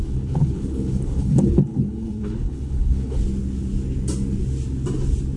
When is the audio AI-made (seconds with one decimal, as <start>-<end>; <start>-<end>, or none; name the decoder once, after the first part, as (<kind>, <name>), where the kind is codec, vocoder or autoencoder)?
0.0-3.2 (codec, HILCodec)